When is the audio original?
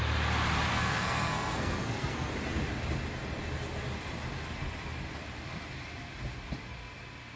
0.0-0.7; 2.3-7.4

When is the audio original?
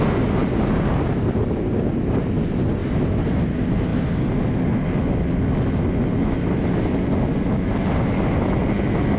0.0-9.2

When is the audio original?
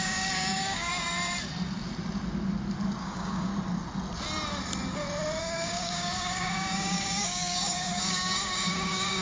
0.9-3.0; 3.5-5.4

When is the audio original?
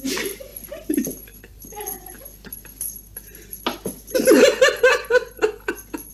0.0-6.1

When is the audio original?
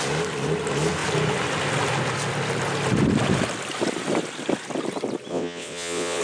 0.0-5.3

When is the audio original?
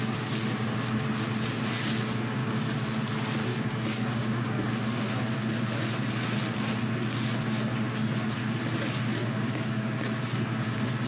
0.0-3.5; 4.7-9.2; 10.2-11.1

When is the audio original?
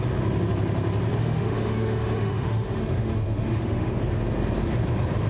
0.0-1.2; 4.0-5.3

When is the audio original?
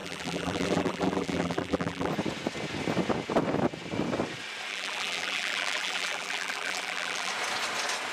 2.1-4.7; 7.3-8.1